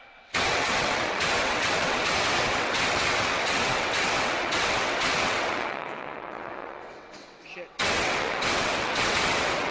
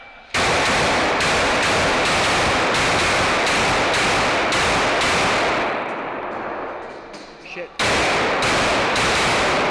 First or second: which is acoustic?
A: second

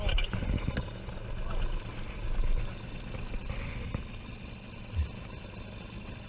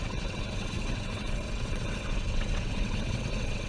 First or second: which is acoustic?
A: first